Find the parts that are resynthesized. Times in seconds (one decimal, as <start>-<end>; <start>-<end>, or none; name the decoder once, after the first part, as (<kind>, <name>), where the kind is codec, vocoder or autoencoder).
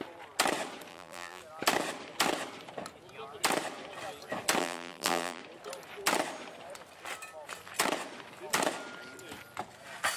0.9-1.4 (vocoder, BigVGAN v2); 4.6-5.4